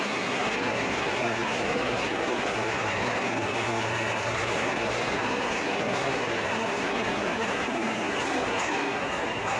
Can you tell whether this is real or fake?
fake